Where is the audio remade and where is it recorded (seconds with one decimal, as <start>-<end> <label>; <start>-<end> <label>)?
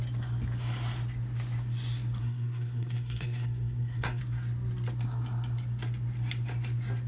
0.0-2.2 recorded; 2.2-4.2 remade; 4.2-7.1 recorded